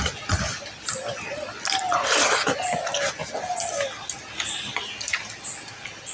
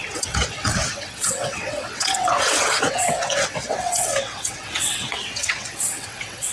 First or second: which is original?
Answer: first